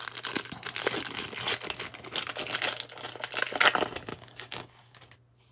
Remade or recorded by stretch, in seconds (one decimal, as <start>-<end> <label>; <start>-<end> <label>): 0.0-4.1 recorded; 4.1-5.0 remade; 5.0-5.5 recorded